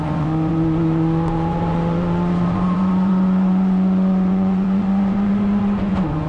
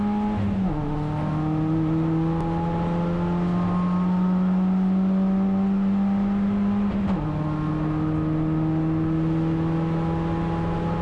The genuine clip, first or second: second